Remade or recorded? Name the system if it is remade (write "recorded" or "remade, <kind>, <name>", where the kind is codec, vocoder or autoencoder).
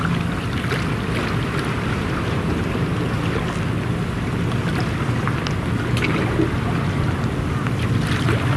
recorded